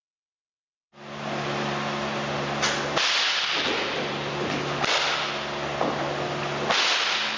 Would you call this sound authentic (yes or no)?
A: yes